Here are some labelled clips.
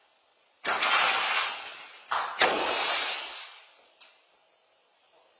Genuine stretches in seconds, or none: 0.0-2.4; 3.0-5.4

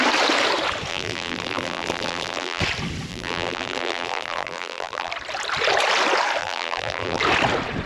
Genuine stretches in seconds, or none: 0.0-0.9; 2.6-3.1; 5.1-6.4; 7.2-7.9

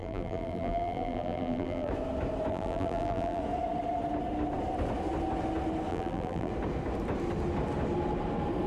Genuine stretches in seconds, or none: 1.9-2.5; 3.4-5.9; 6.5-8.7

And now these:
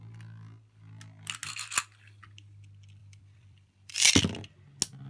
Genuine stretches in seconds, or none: 0.0-3.0; 4.2-5.1